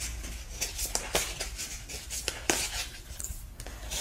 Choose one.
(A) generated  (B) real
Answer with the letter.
B